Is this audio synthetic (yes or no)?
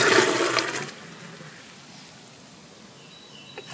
no